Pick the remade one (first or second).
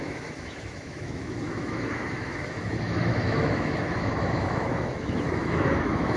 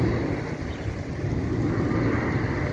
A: first